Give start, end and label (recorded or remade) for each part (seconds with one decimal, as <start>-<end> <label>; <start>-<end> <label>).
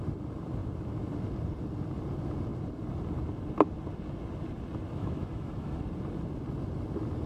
0.0-5.0 recorded; 5.0-5.8 remade; 5.8-7.3 recorded